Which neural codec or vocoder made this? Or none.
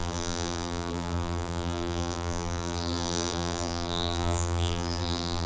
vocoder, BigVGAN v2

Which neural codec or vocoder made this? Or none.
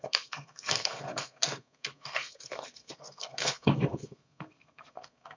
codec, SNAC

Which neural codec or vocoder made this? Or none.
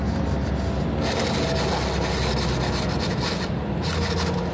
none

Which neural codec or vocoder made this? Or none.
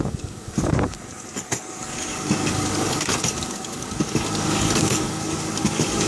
codec, DAC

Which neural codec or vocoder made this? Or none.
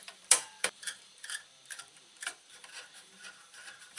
vocoder, BigVGAN v2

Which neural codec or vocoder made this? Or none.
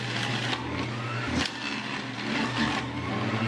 none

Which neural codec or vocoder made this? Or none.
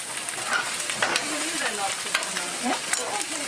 vocoder, BigVGAN v2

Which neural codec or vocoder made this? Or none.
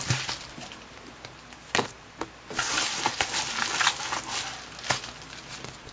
none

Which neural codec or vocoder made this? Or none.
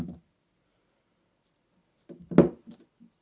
none